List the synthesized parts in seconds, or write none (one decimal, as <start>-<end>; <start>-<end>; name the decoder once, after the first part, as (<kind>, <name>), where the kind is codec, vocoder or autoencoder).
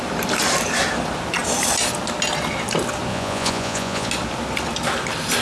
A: 3.1-4.1 (vocoder, Vocos)